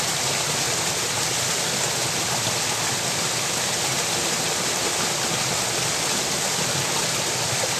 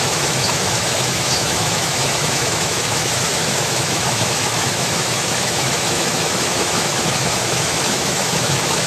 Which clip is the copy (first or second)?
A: second